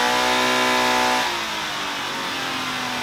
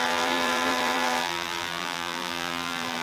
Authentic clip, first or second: first